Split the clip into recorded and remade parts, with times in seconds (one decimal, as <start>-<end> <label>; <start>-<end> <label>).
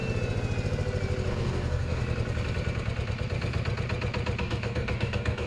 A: 0.0-1.3 recorded; 1.3-2.0 remade; 2.0-4.4 recorded; 4.4-5.5 remade